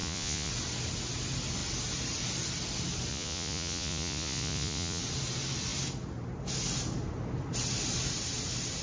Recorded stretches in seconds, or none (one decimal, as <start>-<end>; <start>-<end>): 0.5-3.1; 5.0-8.8